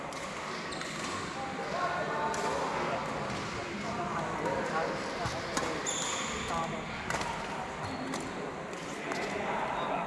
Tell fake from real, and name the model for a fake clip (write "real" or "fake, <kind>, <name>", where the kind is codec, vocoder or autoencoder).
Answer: real